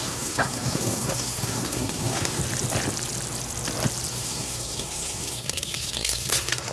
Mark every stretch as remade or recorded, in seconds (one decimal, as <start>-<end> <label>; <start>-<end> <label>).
0.0-2.4 remade; 2.4-4.1 recorded; 4.1-6.7 remade